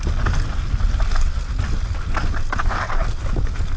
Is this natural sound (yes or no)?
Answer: yes